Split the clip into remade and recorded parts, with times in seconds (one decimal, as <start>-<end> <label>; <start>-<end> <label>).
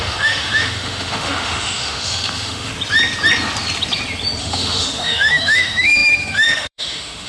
0.0-2.7 remade; 2.7-4.4 recorded; 4.4-7.3 remade